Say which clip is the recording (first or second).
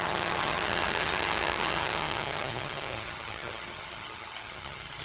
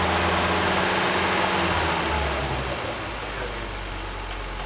second